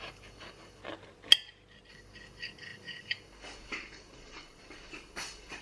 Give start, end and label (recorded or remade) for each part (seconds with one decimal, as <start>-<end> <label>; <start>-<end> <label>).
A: 0.0-0.8 remade; 0.8-1.9 recorded; 1.9-5.6 remade